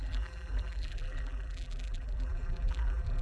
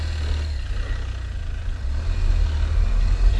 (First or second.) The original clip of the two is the second